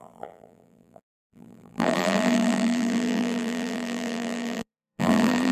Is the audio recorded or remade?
remade